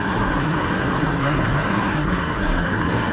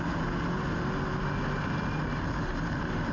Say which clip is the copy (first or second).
first